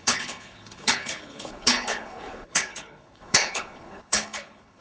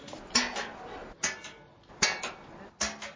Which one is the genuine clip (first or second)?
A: second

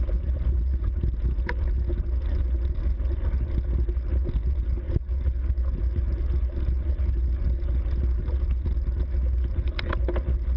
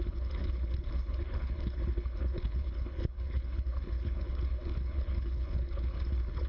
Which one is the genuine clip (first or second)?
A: first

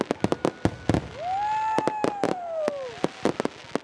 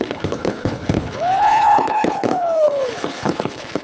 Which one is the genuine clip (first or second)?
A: first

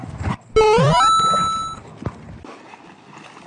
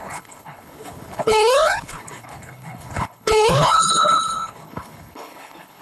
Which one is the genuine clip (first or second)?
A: first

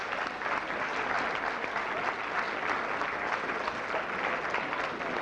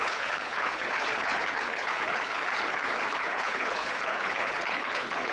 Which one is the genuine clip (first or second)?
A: first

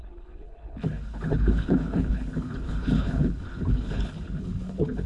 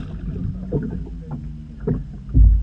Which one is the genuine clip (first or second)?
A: second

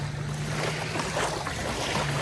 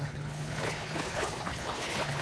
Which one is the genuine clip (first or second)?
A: first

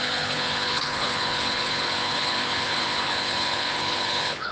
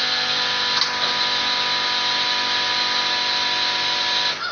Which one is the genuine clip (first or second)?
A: second